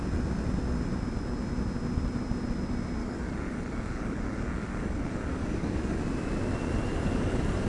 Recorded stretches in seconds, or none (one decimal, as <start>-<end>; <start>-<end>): 0.0-3.0; 6.0-6.9